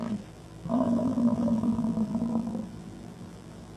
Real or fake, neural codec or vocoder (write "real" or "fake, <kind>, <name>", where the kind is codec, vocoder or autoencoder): fake, vocoder, BigVGAN v2